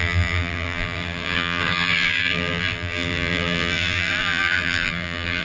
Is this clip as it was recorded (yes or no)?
no